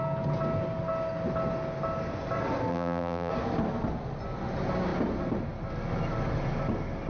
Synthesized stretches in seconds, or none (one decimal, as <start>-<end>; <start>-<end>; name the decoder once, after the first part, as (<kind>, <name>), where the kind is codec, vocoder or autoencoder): 2.7-3.3 (vocoder, BigVGAN v2)